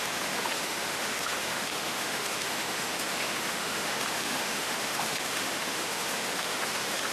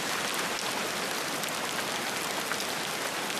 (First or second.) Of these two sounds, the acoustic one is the second